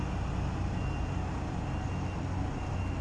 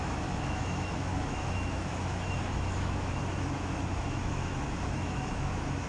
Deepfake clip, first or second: second